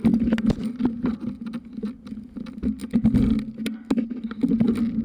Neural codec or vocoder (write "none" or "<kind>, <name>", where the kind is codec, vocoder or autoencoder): none